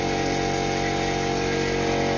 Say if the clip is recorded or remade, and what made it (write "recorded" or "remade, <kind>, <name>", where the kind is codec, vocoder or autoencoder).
recorded